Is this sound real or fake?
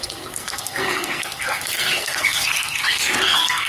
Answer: fake